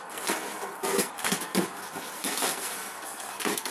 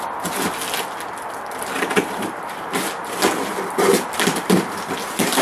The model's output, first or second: first